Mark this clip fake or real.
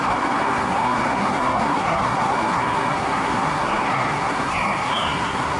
fake